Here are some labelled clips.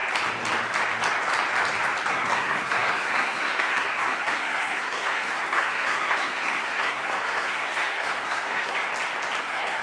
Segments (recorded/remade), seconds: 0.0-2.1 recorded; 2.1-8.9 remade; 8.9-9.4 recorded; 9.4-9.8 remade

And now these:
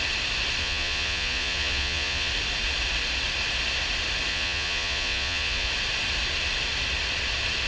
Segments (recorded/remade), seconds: 0.0-0.6 recorded; 0.6-2.3 remade; 2.3-4.3 recorded; 4.3-5.7 remade; 5.7-7.7 recorded

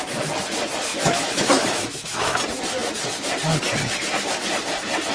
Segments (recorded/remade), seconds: 0.0-0.9 recorded; 0.9-2.4 remade; 2.4-5.1 recorded